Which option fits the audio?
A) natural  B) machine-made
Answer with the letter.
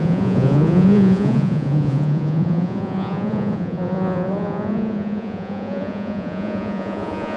B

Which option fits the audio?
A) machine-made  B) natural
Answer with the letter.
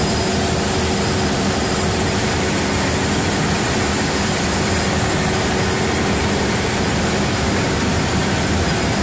A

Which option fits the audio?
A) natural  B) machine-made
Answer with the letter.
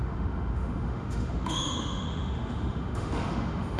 B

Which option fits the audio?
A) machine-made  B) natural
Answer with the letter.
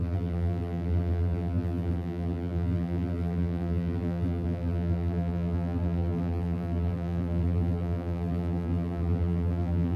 A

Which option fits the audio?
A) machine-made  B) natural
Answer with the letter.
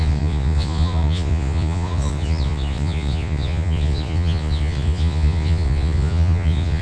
A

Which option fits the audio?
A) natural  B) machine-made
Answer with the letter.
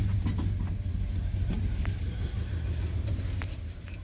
A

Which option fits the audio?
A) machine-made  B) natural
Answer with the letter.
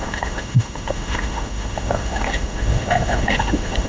A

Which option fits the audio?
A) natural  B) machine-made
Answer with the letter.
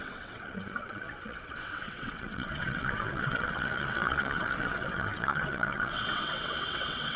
B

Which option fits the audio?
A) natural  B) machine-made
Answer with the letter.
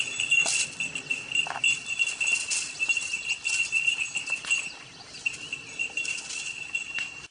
A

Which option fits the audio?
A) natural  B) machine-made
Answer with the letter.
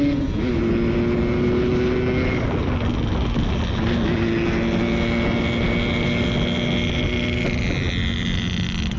A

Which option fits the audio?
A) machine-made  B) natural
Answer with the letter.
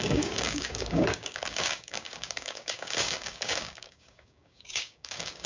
A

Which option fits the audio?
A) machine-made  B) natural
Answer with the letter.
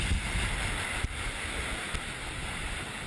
B